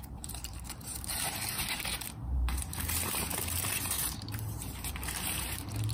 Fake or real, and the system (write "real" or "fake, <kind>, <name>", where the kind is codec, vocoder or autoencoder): fake, vocoder, BigVGAN v2